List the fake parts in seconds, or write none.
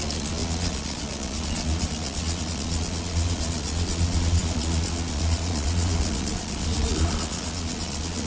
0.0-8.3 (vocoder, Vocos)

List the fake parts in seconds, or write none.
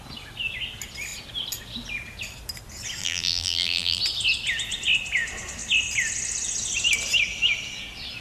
3.0-4.0 (vocoder, BigVGAN v2)